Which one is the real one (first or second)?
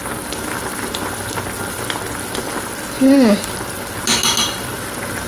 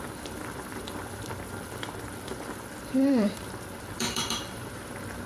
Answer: first